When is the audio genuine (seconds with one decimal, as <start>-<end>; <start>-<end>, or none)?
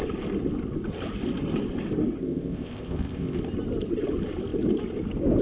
0.0-2.2; 3.4-5.4